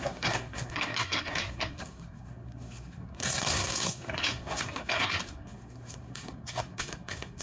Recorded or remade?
remade